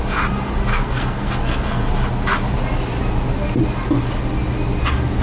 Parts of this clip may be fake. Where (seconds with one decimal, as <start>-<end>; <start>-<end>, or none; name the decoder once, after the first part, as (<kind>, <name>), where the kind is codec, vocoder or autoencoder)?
0.7-1.9 (codec, SNAC)